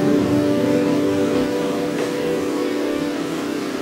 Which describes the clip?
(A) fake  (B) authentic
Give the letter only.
A